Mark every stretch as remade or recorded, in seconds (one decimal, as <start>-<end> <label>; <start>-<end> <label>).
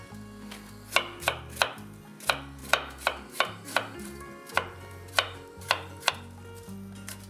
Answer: 0.0-2.6 recorded; 2.6-6.1 remade; 6.1-7.3 recorded